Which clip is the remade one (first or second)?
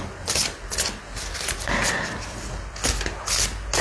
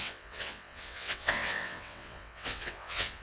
second